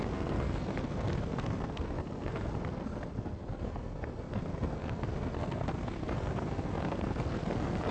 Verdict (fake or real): fake